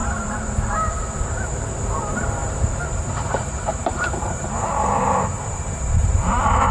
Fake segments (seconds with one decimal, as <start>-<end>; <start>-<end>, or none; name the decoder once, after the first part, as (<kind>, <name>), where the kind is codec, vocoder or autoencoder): 0.0-0.9 (vocoder, BigVGAN v2); 2.4-6.7